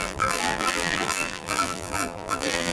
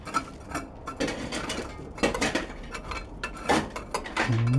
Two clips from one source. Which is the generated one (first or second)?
first